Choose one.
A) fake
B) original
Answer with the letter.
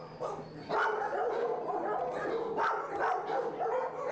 B